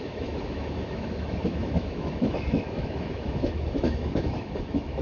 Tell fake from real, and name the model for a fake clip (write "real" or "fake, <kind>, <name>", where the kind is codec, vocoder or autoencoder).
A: fake, autoencoder, DAC-VAE